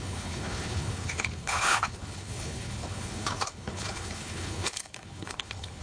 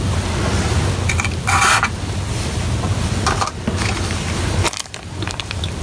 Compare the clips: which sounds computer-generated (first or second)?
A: first